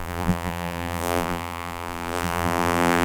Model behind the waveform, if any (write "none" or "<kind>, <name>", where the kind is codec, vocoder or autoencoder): vocoder, BigVGAN v2